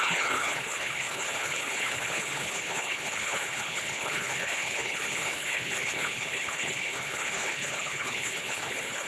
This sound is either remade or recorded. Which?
remade